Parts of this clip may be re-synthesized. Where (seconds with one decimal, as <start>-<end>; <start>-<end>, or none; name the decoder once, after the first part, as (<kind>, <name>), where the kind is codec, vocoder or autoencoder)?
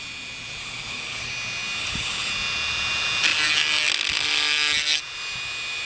0.6-1.3 (codec, HILCodec); 1.8-2.3